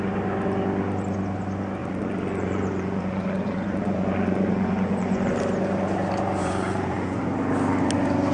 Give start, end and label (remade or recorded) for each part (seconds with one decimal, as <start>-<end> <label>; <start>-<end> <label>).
0.0-1.8 recorded; 1.8-5.3 remade; 5.3-6.4 recorded; 6.4-7.2 remade; 7.2-8.3 recorded